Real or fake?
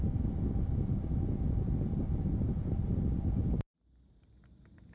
real